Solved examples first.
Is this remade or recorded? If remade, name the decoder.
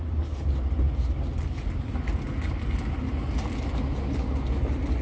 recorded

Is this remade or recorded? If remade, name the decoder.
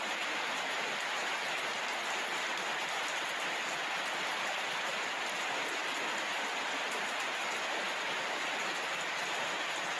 recorded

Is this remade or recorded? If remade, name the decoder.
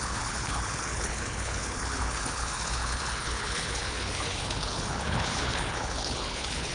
remade, codec, HILCodec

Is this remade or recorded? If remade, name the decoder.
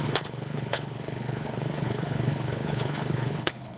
remade, codec, HILCodec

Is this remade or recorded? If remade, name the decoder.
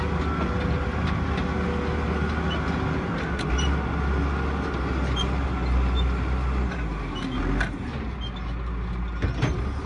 recorded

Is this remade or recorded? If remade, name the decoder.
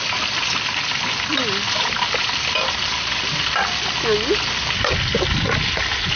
recorded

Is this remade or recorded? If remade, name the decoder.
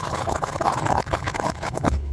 remade, codec, HILCodec